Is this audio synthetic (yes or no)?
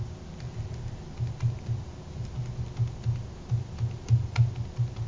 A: no